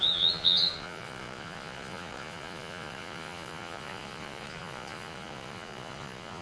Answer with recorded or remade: remade